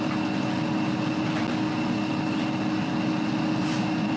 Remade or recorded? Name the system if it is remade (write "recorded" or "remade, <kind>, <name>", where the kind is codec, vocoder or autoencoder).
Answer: recorded